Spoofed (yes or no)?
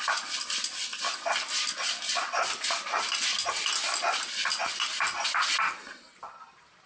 no